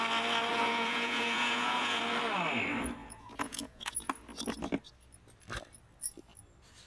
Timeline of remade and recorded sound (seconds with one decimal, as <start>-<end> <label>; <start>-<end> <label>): 0.0-0.5 recorded; 0.5-2.0 remade; 2.0-3.0 recorded; 3.0-4.1 remade; 4.1-6.9 recorded